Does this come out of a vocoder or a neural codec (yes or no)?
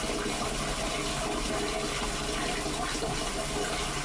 no